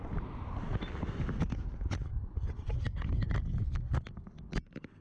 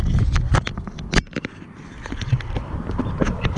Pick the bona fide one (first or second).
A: first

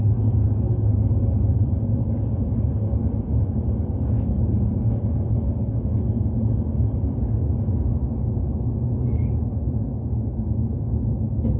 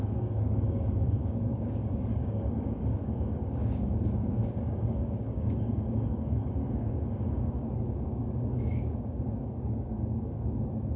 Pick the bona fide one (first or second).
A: first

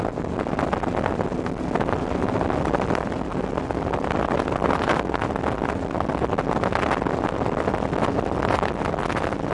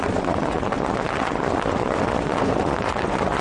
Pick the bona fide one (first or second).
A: first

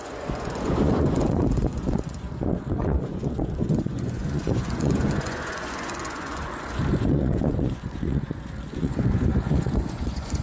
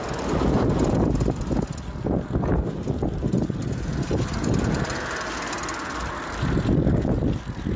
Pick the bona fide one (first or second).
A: second